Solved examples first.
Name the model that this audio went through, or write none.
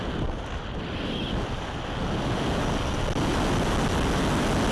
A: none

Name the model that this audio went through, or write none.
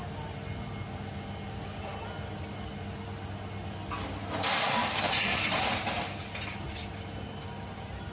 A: none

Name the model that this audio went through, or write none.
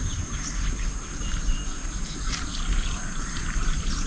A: none